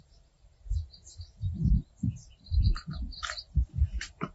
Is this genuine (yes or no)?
no